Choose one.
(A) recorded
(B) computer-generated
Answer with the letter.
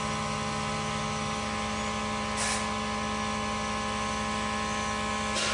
A